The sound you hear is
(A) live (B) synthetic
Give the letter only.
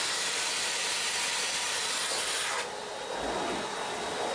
A